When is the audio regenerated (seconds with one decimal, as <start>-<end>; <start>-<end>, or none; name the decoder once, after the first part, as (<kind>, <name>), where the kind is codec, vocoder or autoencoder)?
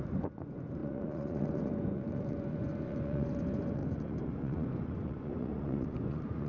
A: 0.0-6.5 (vocoder, Vocos)